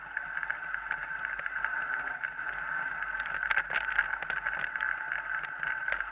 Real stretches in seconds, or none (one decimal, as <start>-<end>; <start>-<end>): 0.0-6.1